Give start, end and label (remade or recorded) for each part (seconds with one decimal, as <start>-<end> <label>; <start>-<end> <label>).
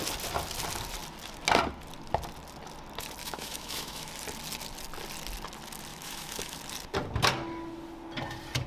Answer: 0.0-3.2 recorded; 3.2-4.1 remade; 4.1-5.9 recorded; 5.9-6.6 remade; 6.6-8.7 recorded